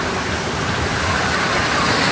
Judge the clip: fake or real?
real